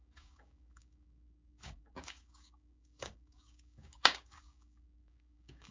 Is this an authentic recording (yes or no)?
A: no